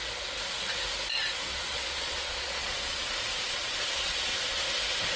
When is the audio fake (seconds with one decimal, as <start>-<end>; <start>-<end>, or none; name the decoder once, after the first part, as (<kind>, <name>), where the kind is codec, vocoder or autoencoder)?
1.5-4.6 (vocoder, Vocos)